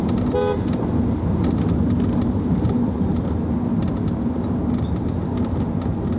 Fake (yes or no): no